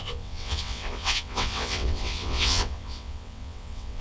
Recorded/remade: remade